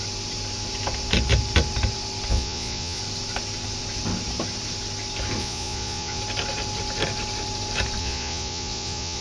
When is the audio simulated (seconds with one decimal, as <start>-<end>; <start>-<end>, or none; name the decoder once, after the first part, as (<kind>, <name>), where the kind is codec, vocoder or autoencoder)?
2.3-3.0 (vocoder, Vocos); 5.4-6.2; 8.0-9.2